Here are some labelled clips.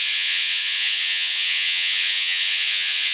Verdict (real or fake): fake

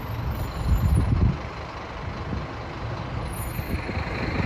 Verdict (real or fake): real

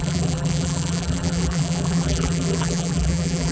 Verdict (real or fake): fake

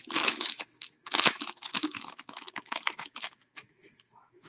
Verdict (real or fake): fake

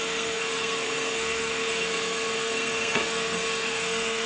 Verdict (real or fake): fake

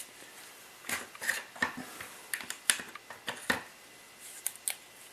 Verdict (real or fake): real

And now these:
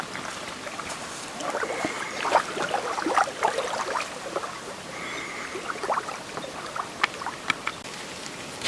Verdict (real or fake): real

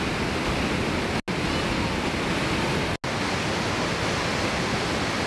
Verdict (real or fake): real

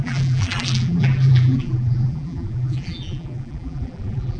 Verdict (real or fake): fake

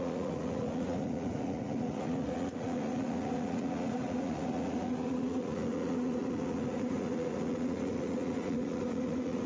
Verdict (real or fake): fake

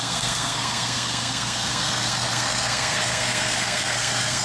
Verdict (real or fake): fake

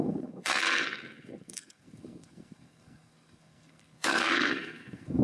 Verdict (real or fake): fake